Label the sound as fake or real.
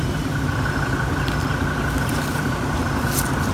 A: real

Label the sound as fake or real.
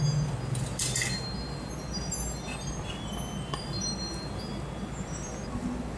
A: real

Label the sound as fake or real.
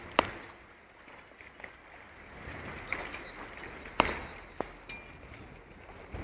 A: real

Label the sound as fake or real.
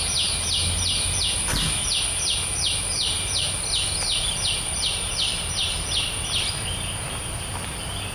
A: real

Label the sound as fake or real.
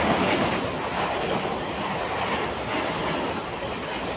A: real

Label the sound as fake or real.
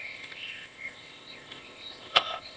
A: fake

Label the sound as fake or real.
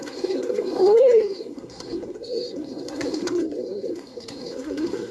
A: fake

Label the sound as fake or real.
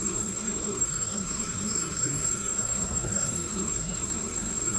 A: fake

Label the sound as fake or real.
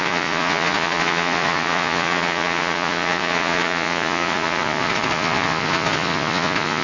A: fake